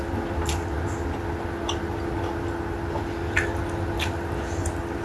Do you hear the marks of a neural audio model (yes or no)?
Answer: no